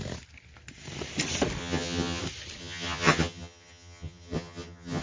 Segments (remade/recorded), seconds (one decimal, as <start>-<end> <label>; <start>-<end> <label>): 0.0-1.6 recorded; 1.6-2.2 remade; 2.2-2.6 recorded; 2.6-5.0 remade